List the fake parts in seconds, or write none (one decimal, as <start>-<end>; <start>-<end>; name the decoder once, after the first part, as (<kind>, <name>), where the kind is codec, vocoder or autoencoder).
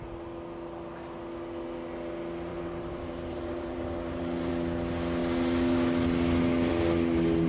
2.5-4.5 (vocoder, BigVGAN v2)